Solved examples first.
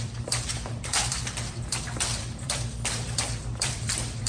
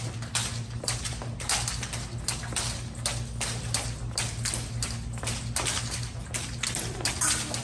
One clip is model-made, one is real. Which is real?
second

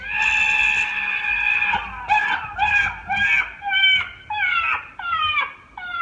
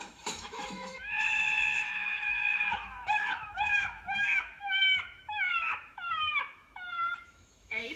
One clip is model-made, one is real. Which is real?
first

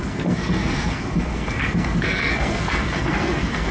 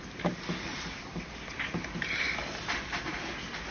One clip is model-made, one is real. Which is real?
second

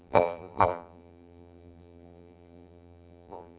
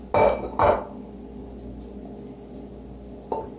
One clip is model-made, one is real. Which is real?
second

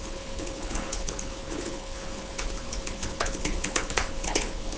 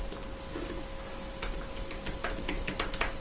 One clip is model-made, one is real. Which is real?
second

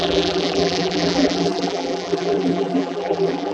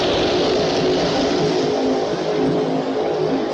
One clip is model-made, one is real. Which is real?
second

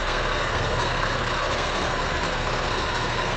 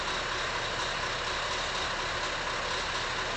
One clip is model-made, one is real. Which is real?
second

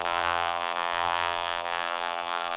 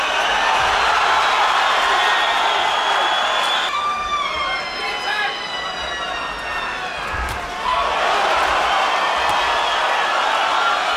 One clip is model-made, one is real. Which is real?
second